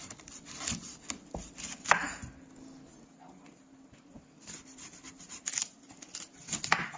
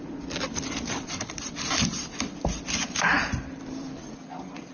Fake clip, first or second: second